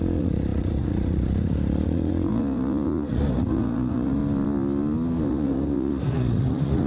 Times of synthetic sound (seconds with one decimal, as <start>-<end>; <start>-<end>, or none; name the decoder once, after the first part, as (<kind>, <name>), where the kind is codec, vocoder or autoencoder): 0.0-4.2 (vocoder, Vocos); 5.3-6.9